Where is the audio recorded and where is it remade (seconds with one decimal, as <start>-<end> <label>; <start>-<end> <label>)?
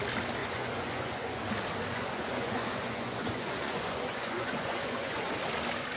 0.0-0.4 recorded; 0.4-1.4 remade; 1.4-1.9 recorded; 1.9-5.3 remade; 5.3-6.0 recorded